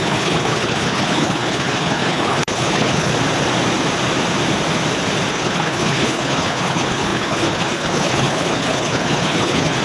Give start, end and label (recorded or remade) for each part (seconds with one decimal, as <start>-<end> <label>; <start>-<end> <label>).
0.0-3.1 remade; 3.1-5.3 recorded; 5.3-9.8 remade